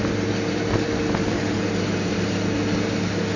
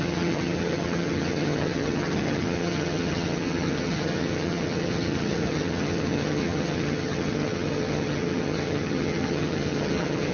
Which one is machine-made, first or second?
second